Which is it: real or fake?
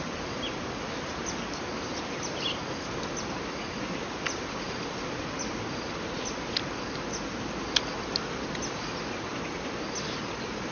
real